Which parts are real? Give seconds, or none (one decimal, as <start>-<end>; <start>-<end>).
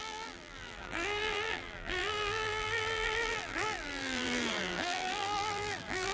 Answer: none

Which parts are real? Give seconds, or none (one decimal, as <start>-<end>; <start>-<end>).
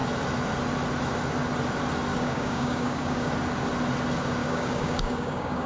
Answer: 0.0-2.1; 3.3-4.4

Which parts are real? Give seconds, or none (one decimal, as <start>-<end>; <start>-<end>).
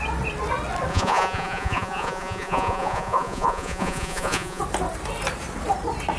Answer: 0.0-0.9; 4.6-6.2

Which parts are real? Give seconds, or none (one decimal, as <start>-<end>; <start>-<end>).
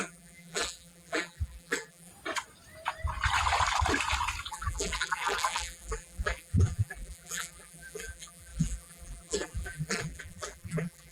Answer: 2.1-4.5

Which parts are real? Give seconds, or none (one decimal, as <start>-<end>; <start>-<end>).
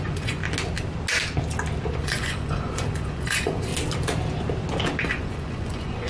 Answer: 0.4-2.0; 3.7-5.0